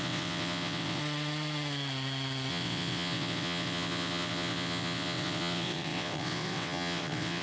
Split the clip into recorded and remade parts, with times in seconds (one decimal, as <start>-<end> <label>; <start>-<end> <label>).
0.0-1.0 remade; 1.0-2.5 recorded; 2.5-7.4 remade

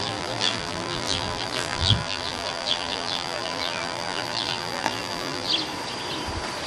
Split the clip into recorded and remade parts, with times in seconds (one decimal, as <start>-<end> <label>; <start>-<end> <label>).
0.0-5.5 remade; 5.5-6.7 recorded

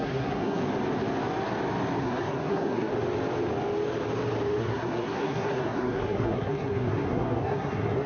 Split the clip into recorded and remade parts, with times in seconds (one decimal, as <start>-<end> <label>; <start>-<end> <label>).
0.0-0.6 remade; 0.6-2.0 recorded; 2.0-2.9 remade; 2.9-4.6 recorded; 4.6-8.1 remade

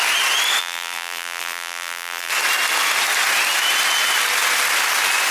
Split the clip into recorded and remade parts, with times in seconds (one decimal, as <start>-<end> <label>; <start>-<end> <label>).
0.0-0.6 recorded; 0.6-2.3 remade; 2.3-5.3 recorded

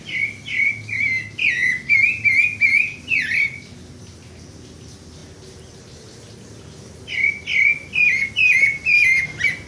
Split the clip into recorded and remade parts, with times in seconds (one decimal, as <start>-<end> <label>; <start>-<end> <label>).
0.0-9.7 recorded

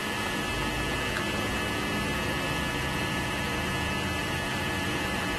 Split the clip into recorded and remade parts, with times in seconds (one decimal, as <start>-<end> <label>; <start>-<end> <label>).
0.0-0.5 remade; 0.5-2.7 recorded; 2.7-3.7 remade; 3.7-4.2 recorded; 4.2-5.4 remade

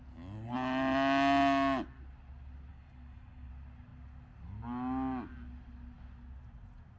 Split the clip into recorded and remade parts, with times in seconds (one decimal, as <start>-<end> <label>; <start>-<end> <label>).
0.0-2.7 recorded; 2.7-3.5 remade; 3.5-7.0 recorded